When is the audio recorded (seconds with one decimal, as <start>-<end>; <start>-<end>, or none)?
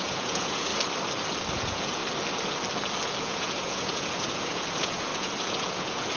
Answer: 0.7-1.5; 2.0-3.2